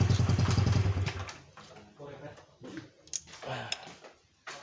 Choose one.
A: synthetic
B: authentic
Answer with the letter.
B